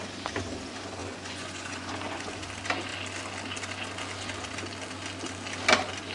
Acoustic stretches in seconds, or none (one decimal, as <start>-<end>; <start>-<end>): 0.0-1.0; 2.5-6.1